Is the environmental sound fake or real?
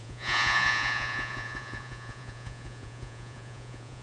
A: fake